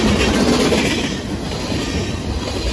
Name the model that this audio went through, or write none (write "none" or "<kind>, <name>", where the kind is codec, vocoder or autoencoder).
none